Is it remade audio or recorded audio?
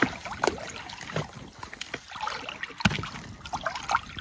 recorded